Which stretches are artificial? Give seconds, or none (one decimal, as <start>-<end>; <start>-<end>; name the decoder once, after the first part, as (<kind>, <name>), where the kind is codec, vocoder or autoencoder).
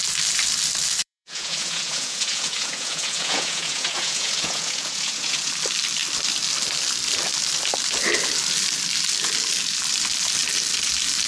1.0-5.5 (vocoder, Vocos)